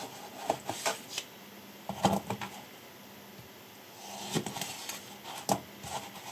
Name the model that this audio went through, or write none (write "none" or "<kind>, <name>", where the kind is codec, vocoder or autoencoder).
none